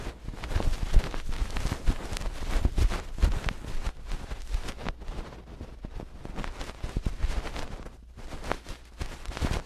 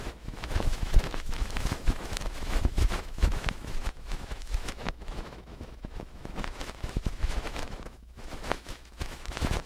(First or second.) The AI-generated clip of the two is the second